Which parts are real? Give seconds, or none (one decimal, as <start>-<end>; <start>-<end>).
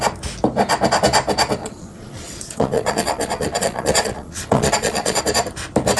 0.0-1.6; 5.2-6.0